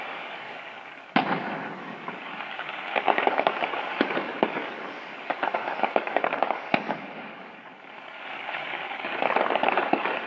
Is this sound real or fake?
fake